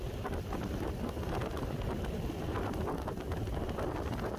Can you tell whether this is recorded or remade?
recorded